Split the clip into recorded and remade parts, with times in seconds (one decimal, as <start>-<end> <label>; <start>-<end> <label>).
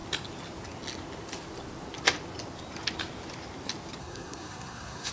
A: 0.0-4.0 recorded; 4.0-5.1 remade